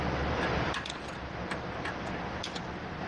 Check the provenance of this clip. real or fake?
real